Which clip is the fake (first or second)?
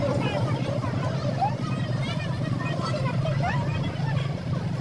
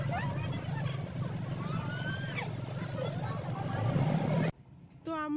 first